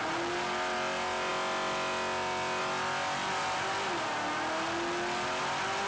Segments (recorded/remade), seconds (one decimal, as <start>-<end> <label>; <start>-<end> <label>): 0.0-5.9 recorded